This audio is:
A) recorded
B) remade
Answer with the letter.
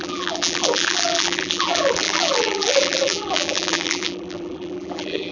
B